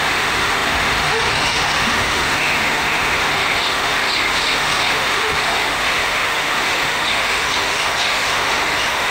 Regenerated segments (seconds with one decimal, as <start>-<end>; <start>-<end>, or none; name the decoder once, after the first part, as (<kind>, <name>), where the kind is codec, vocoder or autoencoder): 0.0-9.1 (autoencoder, DAC-VAE)